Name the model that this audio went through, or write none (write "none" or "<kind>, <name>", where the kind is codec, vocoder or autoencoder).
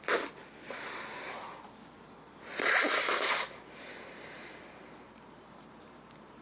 none